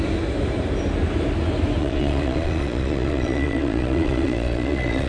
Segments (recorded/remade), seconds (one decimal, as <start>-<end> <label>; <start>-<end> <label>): 0.0-1.8 recorded; 1.8-5.1 remade